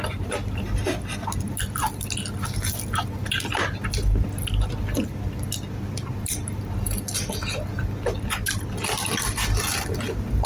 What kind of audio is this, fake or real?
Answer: real